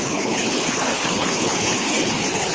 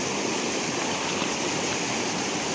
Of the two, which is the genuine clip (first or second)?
second